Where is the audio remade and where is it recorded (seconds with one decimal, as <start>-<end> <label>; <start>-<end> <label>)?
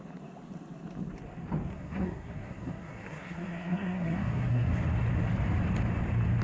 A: 0.0-1.7 recorded; 1.7-4.7 remade; 4.7-6.4 recorded